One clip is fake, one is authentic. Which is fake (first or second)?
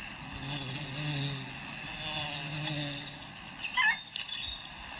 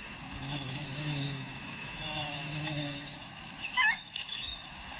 second